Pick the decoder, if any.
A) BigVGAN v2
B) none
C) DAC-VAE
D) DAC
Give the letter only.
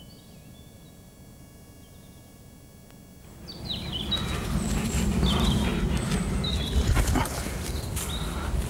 B